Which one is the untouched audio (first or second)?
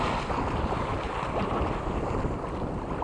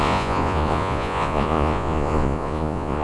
first